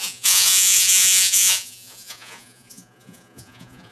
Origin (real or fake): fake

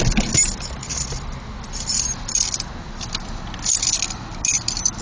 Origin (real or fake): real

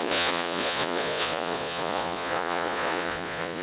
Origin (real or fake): fake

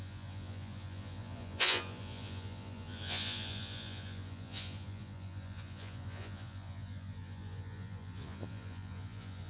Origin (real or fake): fake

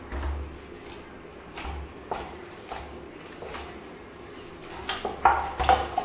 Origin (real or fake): real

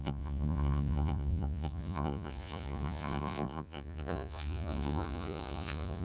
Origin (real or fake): fake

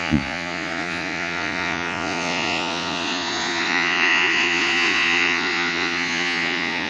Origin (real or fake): fake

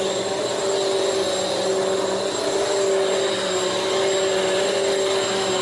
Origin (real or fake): real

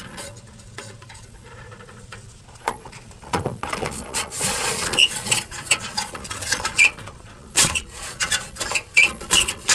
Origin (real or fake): fake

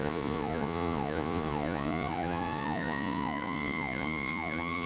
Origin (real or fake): fake